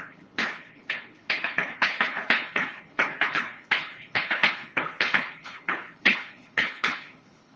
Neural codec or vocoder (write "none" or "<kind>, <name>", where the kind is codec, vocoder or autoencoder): codec, HILCodec